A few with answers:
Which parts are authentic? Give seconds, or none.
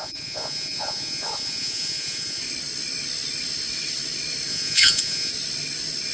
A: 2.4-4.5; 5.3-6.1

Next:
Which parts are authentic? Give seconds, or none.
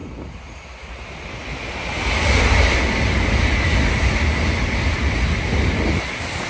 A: 0.0-6.5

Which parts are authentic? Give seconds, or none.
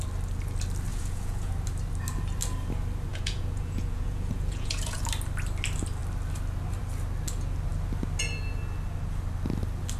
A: 0.0-0.9; 1.5-3.1; 5.0-10.0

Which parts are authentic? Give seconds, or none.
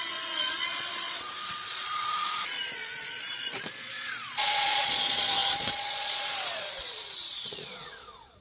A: none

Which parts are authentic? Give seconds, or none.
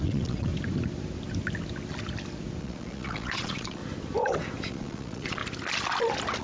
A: 0.5-2.6; 3.8-4.7; 5.4-6.4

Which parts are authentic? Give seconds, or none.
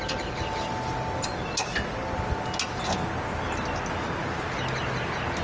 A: 0.0-5.4